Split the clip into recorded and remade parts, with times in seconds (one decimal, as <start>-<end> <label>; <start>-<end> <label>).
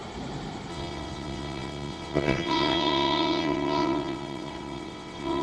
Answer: 0.0-0.7 recorded; 0.7-5.4 remade